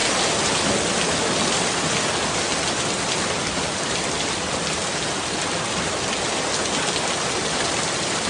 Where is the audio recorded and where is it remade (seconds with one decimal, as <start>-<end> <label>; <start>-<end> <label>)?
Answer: 0.0-8.3 recorded